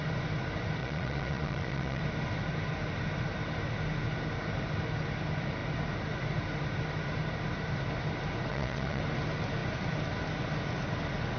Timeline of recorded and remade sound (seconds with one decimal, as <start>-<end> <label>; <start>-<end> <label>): 0.0-0.8 recorded; 0.8-2.0 remade; 2.0-8.5 recorded; 8.5-9.0 remade; 9.0-11.4 recorded